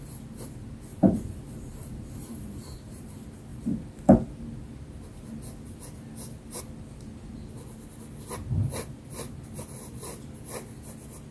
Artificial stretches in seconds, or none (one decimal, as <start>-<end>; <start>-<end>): 0.9-3.1